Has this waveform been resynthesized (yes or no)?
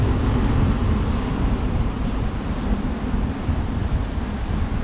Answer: no